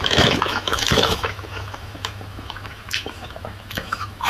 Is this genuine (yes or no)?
no